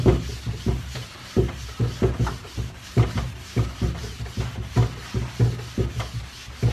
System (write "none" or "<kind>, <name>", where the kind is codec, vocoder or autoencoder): none